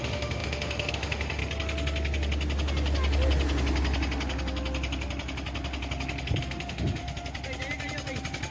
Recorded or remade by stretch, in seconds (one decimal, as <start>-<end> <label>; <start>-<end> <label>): 0.0-1.4 remade; 1.4-6.4 recorded; 6.4-7.0 remade; 7.0-8.5 recorded

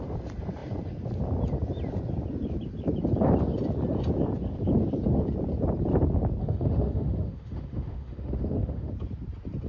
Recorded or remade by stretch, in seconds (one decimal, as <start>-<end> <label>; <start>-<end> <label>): 0.0-6.4 recorded; 6.4-8.9 remade; 8.9-9.7 recorded